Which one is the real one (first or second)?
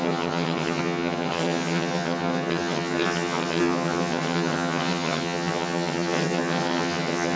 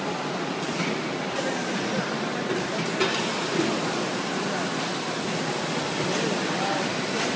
second